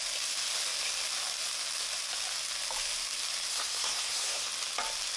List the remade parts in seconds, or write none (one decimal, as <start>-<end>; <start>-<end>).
3.5-4.5